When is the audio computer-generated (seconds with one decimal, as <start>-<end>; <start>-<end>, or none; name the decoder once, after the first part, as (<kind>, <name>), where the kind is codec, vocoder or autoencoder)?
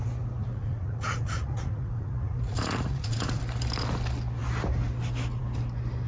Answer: 0.4-3.4 (vocoder, Vocos)